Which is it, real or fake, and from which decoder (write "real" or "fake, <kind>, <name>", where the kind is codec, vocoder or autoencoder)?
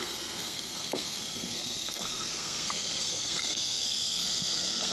fake, codec, SNAC